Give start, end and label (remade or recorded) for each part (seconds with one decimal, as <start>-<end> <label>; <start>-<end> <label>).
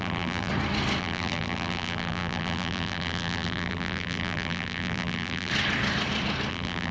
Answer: 0.0-0.5 remade; 0.5-1.0 recorded; 1.0-5.5 remade; 5.5-6.5 recorded; 6.5-6.9 remade